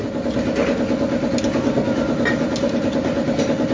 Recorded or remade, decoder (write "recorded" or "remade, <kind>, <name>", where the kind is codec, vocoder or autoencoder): recorded